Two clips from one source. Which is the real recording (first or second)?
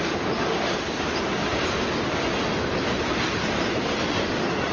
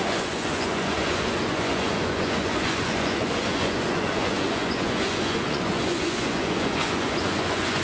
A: first